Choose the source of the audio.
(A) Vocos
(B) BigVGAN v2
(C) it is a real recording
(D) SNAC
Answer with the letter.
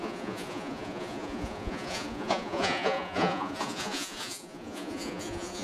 A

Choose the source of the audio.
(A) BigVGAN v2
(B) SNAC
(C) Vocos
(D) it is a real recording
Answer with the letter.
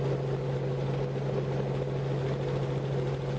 D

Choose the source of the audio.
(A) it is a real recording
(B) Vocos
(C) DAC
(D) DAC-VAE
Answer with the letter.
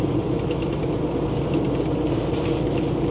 A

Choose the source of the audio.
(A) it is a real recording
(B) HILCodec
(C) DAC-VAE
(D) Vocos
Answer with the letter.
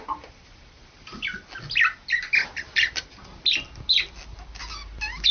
A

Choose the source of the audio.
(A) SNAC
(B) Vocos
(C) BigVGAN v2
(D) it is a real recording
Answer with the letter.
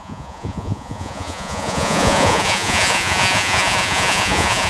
B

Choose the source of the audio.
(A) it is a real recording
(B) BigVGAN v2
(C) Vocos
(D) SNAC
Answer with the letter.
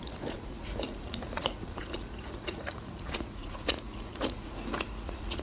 C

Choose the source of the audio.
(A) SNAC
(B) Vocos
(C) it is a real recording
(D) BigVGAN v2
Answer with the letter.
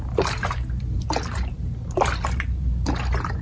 C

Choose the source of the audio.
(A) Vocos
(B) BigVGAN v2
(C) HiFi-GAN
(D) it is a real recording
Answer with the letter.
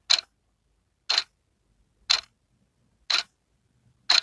D